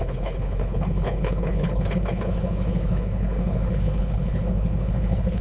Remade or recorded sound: remade